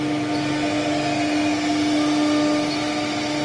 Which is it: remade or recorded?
recorded